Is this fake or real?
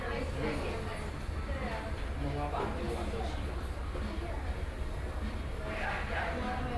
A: real